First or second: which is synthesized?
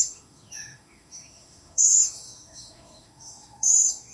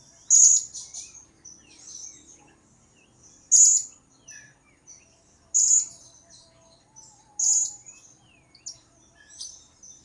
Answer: first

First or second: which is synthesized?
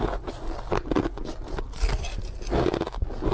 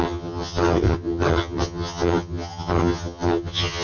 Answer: second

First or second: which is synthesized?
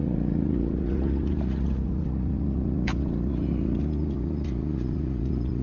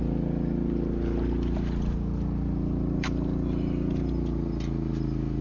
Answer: first